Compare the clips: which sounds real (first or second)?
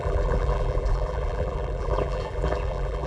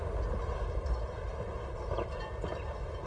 second